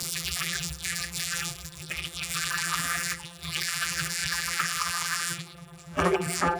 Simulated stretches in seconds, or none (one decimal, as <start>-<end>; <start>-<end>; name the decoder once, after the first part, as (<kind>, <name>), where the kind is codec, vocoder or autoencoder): 0.0-6.6 (vocoder, BigVGAN v2)